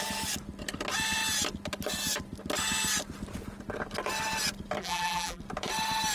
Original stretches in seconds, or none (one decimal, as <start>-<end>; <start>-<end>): 0.0-4.8; 5.4-6.1